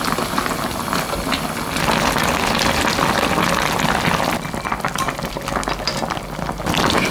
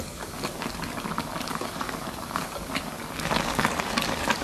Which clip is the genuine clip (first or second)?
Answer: first